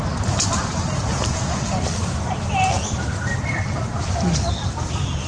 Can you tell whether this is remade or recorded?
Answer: recorded